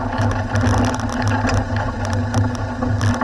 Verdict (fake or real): real